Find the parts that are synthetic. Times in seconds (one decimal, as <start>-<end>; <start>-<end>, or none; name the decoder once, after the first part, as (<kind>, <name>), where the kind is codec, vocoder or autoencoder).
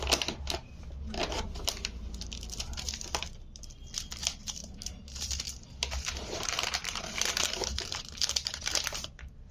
4.6-8.6 (vocoder, BigVGAN v2)